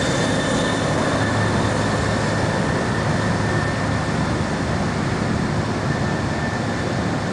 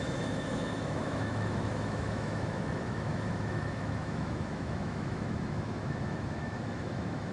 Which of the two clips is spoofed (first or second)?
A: second